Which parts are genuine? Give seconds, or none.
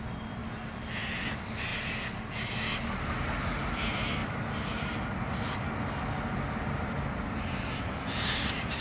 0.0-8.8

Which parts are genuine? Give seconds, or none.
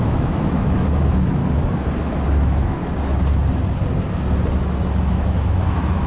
1.4-5.1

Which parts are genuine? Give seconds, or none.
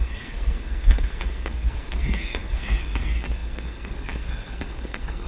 none